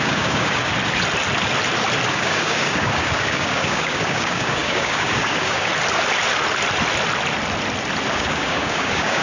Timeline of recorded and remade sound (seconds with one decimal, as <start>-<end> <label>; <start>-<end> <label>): 0.0-0.7 remade; 0.7-2.1 recorded; 2.1-5.7 remade; 5.7-8.1 recorded; 8.1-9.2 remade

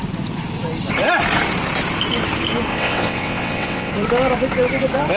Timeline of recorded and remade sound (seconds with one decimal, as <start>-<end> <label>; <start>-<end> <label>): 0.0-2.7 recorded; 2.7-3.9 remade; 3.9-5.2 recorded

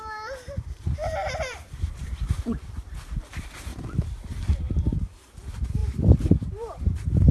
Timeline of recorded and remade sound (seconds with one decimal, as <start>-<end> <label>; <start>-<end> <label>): 0.0-3.7 remade; 3.7-4.6 recorded; 4.6-7.3 remade

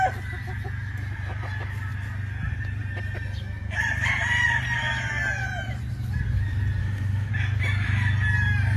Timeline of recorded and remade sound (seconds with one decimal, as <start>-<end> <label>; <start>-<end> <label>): 0.0-6.8 recorded; 6.8-7.3 remade; 7.3-8.8 recorded

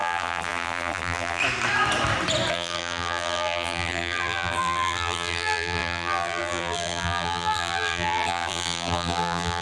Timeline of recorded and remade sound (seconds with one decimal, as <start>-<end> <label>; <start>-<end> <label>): 0.0-1.4 remade; 1.4-2.5 recorded; 2.5-9.6 remade

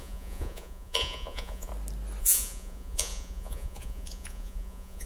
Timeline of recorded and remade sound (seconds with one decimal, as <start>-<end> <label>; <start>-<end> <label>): 0.0-1.7 remade; 1.7-2.2 recorded; 2.2-5.1 remade

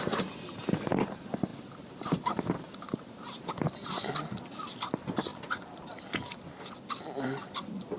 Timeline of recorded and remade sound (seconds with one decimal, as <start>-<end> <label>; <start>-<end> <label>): 0.0-1.5 remade; 1.5-3.5 recorded; 3.5-5.3 remade; 5.3-6.6 recorded; 6.6-8.0 remade

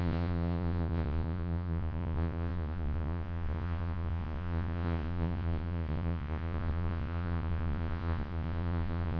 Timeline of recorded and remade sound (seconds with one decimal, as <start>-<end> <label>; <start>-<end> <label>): 0.0-9.2 remade